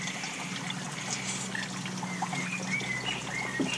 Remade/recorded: recorded